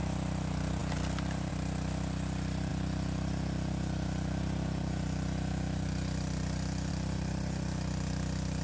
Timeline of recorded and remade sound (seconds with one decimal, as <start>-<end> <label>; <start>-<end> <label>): 0.0-8.6 recorded